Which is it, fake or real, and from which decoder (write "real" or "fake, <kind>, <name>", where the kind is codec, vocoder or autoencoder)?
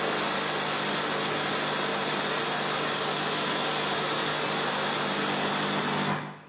real